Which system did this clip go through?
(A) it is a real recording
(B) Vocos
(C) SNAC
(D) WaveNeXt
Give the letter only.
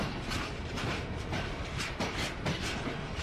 A